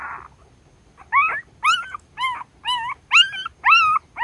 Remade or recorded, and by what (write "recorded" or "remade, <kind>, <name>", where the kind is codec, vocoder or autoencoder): recorded